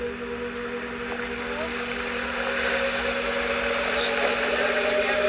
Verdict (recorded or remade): recorded